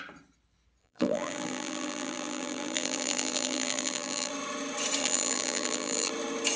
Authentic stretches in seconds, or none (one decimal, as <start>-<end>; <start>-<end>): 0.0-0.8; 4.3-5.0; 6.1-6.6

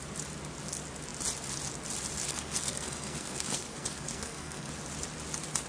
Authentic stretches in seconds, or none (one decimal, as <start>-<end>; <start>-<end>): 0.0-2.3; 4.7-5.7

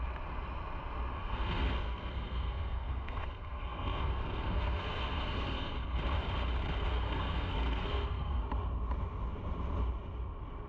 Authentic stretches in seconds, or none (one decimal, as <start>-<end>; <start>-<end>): 0.0-1.1; 6.0-6.9; 8.4-10.7

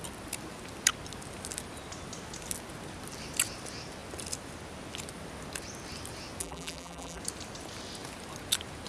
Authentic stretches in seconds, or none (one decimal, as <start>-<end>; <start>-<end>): 0.0-6.4; 7.2-8.9